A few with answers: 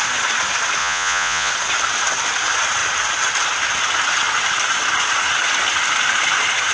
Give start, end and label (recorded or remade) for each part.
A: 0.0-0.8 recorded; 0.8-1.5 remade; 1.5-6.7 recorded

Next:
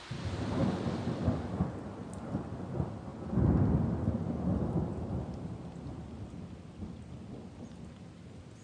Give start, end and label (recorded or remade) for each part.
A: 0.0-0.6 remade; 0.6-2.7 recorded; 2.7-3.1 remade; 3.1-6.3 recorded; 6.3-8.6 remade

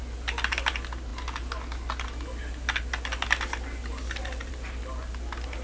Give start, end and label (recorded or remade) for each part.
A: 0.0-5.6 recorded

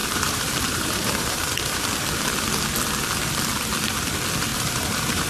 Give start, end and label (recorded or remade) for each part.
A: 0.0-1.8 remade; 1.8-4.5 recorded; 4.5-5.3 remade

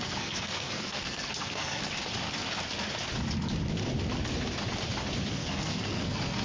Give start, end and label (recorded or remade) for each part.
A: 0.0-1.8 remade; 1.8-5.3 recorded; 5.3-6.4 remade

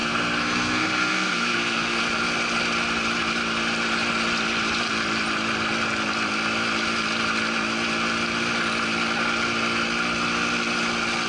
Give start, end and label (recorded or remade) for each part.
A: 0.0-2.0 remade; 2.0-11.3 recorded

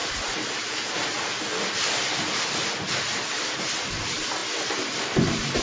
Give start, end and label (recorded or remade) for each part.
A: 0.0-5.6 recorded

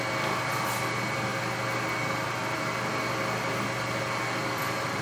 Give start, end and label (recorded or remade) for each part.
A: 0.0-5.0 recorded